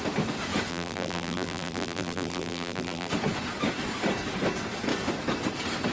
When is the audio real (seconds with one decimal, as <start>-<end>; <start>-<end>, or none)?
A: 0.0-0.7; 3.1-5.9